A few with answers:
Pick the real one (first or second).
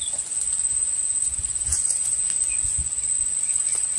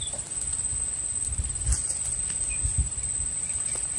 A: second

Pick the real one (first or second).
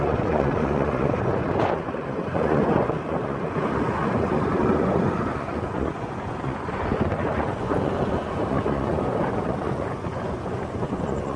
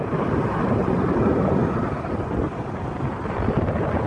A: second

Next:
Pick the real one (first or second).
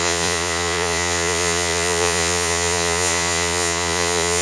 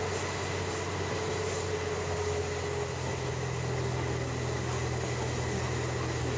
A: second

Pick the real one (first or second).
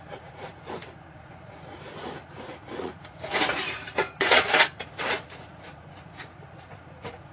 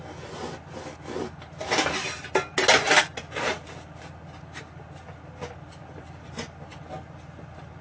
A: second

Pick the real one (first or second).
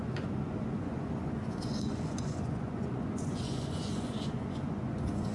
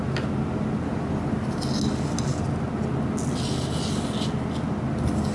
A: second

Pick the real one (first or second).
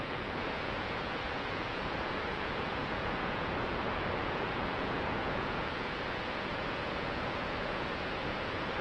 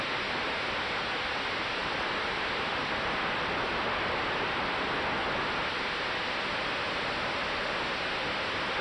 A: second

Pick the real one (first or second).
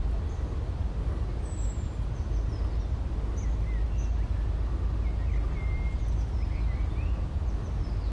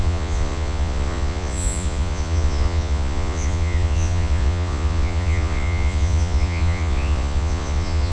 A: first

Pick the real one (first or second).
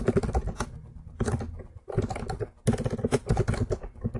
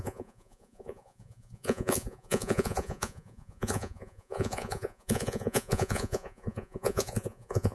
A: first